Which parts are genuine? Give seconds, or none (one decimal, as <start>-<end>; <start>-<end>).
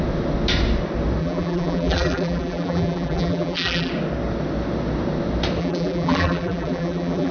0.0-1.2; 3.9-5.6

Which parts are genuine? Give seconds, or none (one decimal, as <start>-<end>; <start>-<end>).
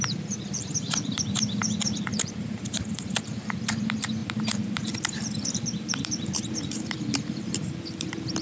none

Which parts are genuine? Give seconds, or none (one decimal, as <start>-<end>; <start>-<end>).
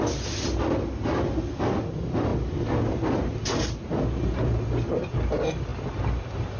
0.0-6.6